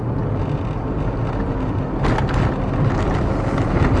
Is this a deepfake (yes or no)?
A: no